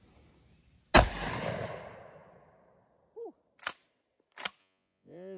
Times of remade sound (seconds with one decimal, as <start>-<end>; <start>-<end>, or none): 4.6-5.4